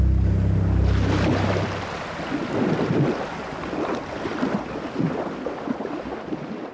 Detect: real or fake real